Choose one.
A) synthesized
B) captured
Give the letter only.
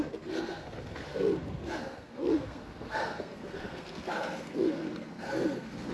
A